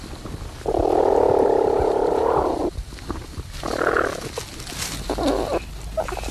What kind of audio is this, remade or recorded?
recorded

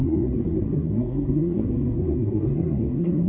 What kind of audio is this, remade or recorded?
remade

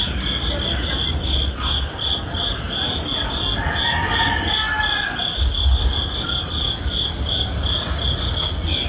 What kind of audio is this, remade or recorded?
recorded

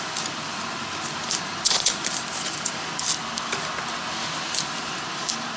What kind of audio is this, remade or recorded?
remade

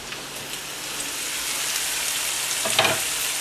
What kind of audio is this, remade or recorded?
remade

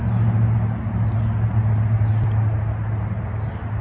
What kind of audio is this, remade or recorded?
recorded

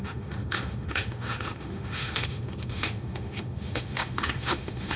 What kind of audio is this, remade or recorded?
remade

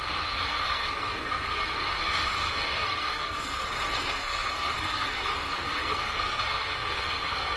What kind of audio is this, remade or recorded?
remade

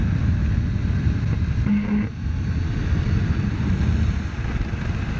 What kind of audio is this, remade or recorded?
recorded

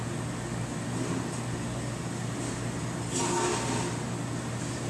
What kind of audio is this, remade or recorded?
recorded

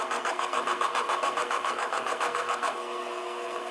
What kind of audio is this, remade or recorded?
remade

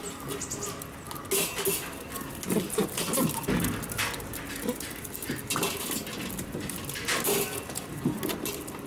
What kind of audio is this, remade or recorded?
recorded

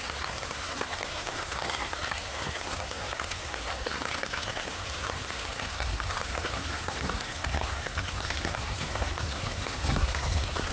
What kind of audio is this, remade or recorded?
remade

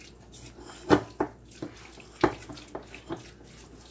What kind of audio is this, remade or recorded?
recorded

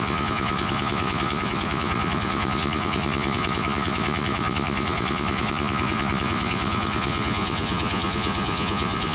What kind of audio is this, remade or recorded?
remade